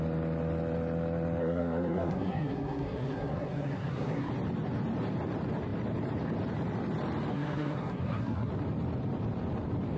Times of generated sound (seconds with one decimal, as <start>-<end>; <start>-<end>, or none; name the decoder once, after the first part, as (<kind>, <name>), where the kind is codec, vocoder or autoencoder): 1.4-4.3 (codec, SNAC); 7.3-8.5